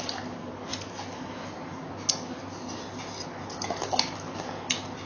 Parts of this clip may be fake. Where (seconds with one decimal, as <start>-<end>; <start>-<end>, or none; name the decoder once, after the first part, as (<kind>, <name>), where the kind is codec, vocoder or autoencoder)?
none